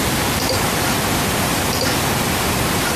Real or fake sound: real